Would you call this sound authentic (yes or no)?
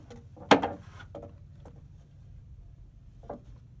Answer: yes